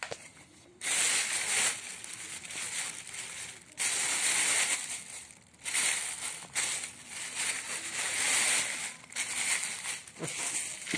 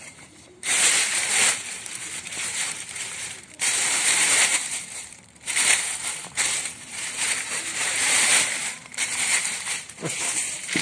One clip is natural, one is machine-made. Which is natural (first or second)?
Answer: first